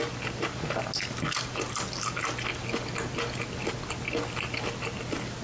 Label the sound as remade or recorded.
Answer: recorded